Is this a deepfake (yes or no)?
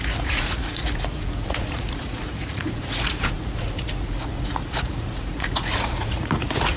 yes